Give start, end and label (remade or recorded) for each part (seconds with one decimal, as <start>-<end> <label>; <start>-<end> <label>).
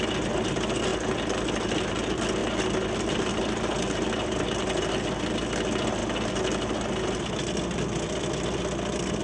0.0-9.2 recorded